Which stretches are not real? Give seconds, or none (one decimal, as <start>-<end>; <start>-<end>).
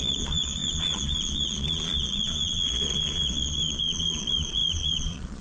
0.0-5.4